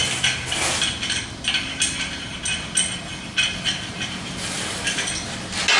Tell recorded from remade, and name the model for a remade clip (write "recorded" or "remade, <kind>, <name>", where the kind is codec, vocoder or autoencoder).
recorded